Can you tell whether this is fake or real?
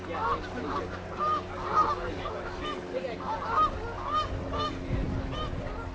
real